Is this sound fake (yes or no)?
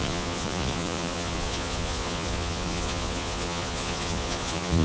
yes